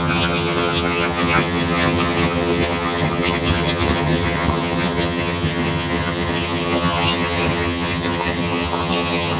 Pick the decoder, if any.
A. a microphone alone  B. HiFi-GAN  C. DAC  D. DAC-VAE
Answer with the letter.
B